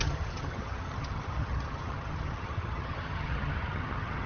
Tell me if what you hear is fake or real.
fake